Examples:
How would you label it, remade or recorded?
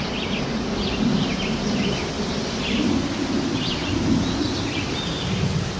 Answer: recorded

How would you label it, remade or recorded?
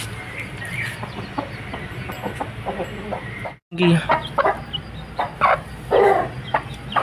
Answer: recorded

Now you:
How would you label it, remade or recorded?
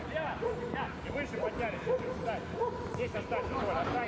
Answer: recorded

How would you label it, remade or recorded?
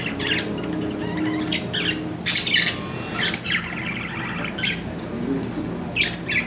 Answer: recorded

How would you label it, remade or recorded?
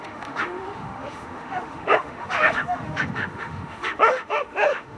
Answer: remade